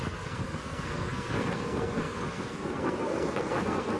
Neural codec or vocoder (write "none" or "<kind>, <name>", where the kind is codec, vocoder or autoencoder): codec, SNAC